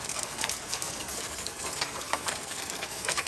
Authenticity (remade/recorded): remade